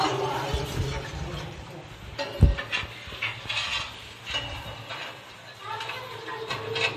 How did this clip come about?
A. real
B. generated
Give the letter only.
A